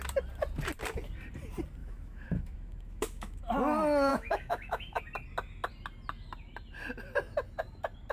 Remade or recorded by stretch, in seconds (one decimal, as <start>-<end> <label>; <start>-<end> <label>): 0.0-1.8 recorded; 1.8-3.4 remade; 3.4-4.1 recorded; 4.1-5.0 remade; 5.0-8.1 recorded